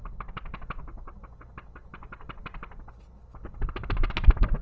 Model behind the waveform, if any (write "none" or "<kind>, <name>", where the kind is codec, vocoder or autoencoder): none